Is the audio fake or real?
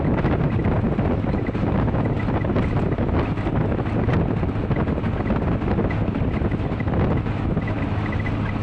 real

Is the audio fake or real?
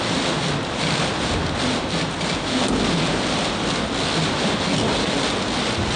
real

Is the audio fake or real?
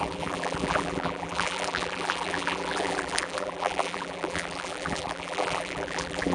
fake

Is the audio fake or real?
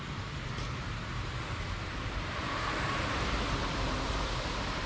fake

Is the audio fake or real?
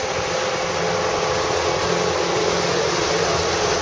real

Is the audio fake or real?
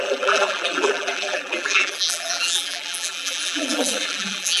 fake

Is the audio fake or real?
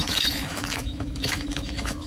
fake